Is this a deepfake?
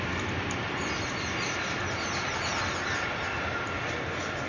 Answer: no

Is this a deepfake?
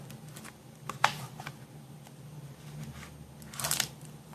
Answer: no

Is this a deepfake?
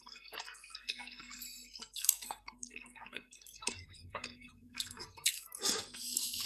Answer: yes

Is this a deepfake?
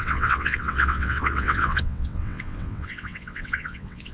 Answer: yes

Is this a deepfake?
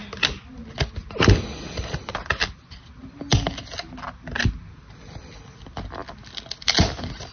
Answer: no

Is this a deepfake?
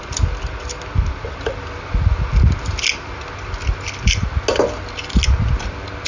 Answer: no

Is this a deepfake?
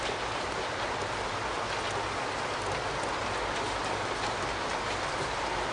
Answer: no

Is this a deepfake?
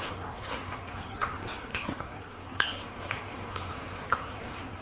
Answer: yes